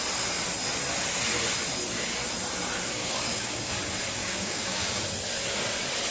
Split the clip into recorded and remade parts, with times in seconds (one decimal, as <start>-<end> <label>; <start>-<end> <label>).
0.0-3.0 recorded; 3.0-3.7 remade; 3.7-4.2 recorded; 4.2-5.0 remade; 5.0-6.1 recorded